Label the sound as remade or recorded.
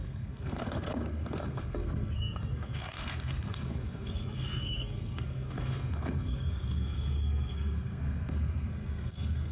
remade